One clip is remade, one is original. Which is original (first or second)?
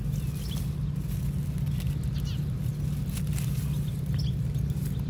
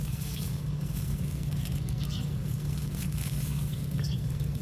first